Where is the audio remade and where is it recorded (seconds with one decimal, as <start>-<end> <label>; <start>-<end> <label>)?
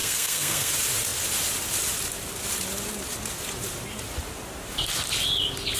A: 0.0-0.7 remade; 0.7-5.8 recorded